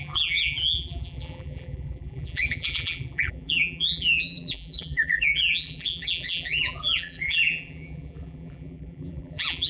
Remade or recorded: remade